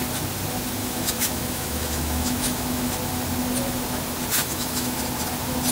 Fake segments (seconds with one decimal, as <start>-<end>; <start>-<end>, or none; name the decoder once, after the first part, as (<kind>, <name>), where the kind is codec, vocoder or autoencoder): 0.8-2.9 (autoencoder, DAC-VAE); 4.4-5.0